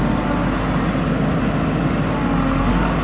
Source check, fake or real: real